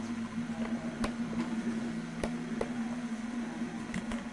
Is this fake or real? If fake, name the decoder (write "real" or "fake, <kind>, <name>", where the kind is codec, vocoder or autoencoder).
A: real